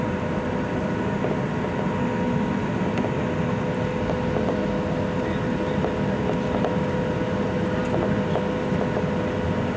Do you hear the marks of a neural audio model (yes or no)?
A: no